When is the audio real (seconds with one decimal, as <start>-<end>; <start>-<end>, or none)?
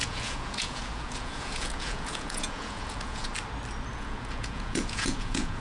3.3-3.9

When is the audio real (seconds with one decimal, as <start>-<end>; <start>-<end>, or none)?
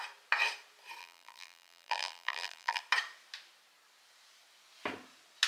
0.0-1.0; 2.8-5.5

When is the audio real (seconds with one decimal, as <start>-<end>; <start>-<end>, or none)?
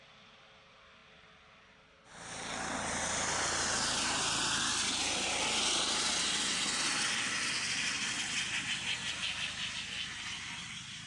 0.0-11.1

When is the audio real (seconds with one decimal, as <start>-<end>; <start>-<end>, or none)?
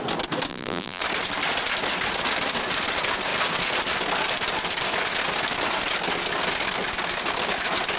0.0-0.5; 1.0-8.0